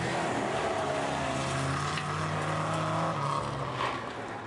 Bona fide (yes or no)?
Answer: yes